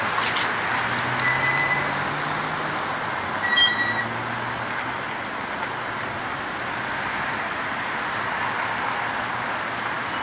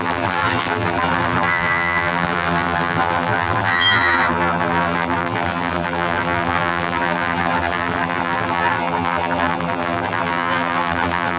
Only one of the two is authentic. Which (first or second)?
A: first